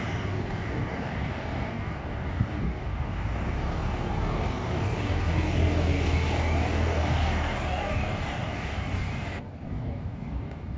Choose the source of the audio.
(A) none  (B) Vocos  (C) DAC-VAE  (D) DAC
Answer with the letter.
D